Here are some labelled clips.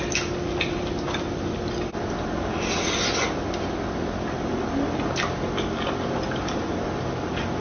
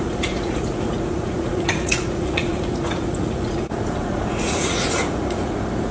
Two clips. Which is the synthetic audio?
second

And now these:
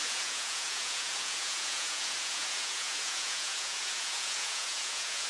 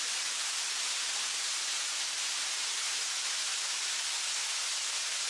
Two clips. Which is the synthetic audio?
first